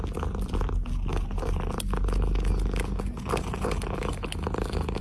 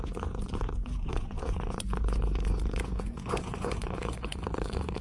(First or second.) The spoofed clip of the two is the second